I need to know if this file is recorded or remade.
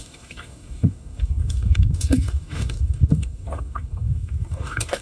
remade